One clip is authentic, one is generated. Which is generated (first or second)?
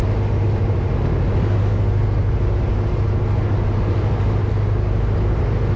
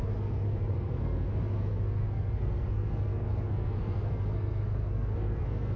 second